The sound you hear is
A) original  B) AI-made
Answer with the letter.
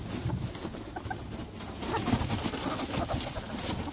A